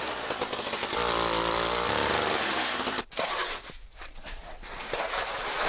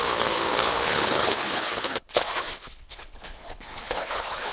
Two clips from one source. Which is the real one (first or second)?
first